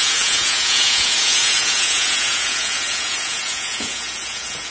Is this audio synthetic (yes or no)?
yes